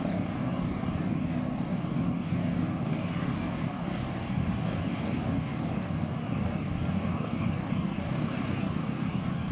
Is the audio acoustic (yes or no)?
no